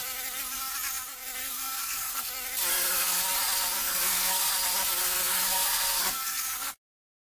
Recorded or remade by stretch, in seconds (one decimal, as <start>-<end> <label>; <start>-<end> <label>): 0.0-1.4 recorded; 1.4-2.3 remade; 2.3-2.7 recorded; 2.7-3.2 remade; 3.2-3.8 recorded; 3.8-4.5 remade; 4.5-5.0 recorded; 5.0-6.7 remade; 6.7-7.2 recorded

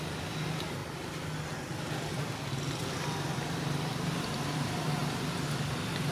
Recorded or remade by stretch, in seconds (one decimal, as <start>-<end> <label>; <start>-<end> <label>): 0.0-0.8 remade; 0.8-1.9 recorded; 1.9-6.1 remade

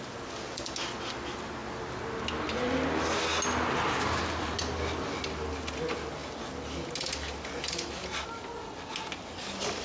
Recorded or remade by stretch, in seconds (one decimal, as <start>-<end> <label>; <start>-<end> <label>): 0.0-9.8 recorded

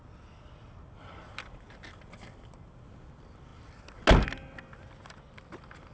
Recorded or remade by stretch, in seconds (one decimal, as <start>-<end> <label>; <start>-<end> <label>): 0.0-5.9 recorded

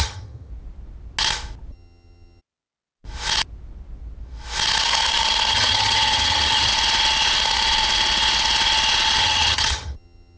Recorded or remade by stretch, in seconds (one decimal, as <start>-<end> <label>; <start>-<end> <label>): 0.0-0.5 remade; 0.5-1.7 recorded; 1.7-2.4 remade; 2.4-5.5 recorded; 5.5-6.7 remade; 6.7-9.2 recorded; 9.2-10.4 remade

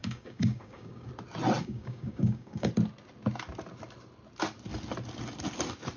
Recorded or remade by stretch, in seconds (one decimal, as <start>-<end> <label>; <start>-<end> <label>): 0.0-1.1 remade; 1.1-1.6 recorded; 1.6-2.7 remade; 2.7-6.0 recorded